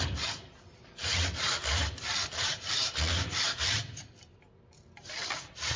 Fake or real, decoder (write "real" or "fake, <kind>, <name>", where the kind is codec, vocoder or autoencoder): real